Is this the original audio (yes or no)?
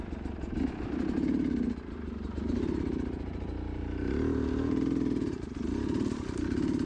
yes